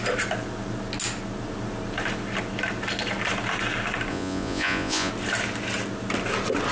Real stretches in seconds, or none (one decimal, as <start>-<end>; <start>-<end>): 0.0-4.1; 5.1-6.7